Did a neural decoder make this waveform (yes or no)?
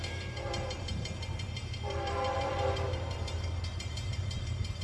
yes